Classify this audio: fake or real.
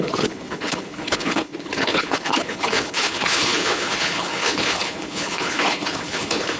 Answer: fake